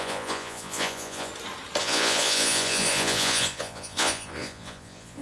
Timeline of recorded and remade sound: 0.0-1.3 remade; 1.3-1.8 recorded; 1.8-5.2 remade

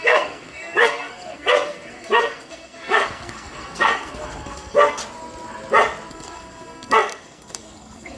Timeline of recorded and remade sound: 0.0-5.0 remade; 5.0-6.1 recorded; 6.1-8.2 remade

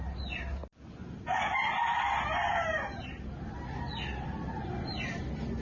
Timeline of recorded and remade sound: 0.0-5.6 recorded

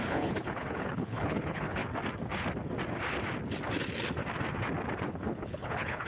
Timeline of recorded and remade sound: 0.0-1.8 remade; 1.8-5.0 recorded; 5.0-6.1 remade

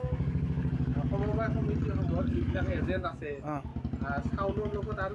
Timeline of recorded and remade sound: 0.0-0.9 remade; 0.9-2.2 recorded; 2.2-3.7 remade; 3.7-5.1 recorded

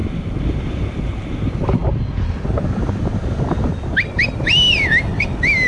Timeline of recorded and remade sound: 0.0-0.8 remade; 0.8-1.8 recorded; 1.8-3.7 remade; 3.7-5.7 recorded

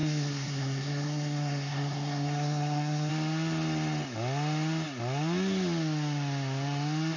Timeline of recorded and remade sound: 0.0-3.1 remade; 3.1-7.2 recorded

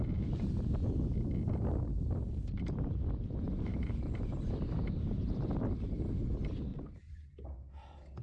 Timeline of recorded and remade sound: 0.0-3.7 recorded; 3.7-5.5 remade; 5.5-6.7 recorded; 6.7-7.7 remade; 7.7-8.2 recorded